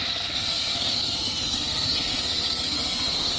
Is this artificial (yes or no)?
yes